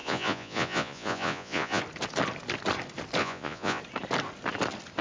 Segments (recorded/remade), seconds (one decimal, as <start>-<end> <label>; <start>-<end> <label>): 0.0-1.8 remade; 1.8-3.2 recorded; 3.2-3.8 remade; 3.8-5.0 recorded